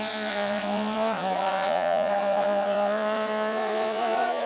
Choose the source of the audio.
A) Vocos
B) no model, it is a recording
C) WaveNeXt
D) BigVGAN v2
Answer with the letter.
A